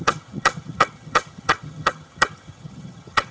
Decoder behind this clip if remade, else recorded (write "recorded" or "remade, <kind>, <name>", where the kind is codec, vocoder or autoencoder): remade, vocoder, HiFi-GAN